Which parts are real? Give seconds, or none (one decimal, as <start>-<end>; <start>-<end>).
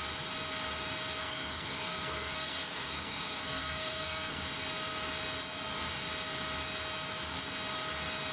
0.0-1.2; 4.4-8.3